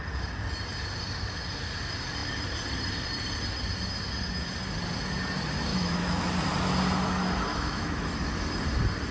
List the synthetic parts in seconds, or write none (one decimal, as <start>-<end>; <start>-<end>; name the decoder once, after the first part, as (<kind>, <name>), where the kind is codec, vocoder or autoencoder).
5.7-6.2 (autoencoder, DAC-VAE); 7.5-8.1